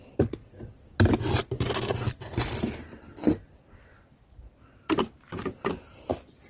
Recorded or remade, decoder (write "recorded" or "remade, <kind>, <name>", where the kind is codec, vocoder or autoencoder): recorded